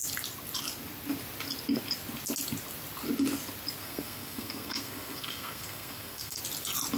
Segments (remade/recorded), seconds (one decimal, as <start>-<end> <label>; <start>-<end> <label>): 0.0-3.8 recorded; 3.8-6.4 remade; 6.4-7.0 recorded